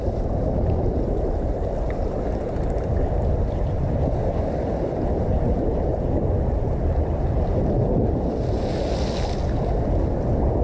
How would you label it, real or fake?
real